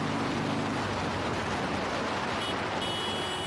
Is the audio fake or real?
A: real